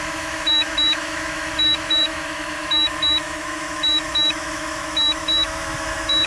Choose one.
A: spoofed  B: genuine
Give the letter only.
A